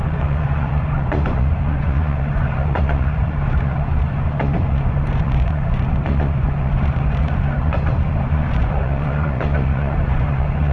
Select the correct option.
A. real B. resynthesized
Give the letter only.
B